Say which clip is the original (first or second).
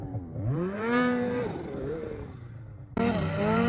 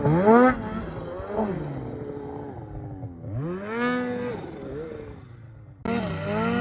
second